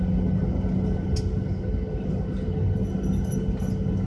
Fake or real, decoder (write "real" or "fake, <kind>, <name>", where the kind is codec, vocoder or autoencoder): real